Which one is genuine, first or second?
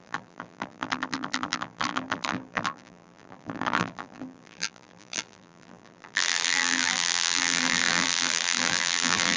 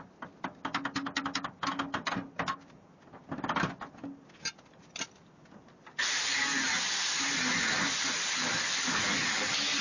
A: second